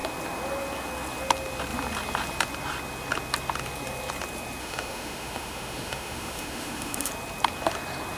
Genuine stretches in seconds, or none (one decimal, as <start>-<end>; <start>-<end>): 0.0-4.6; 7.1-8.2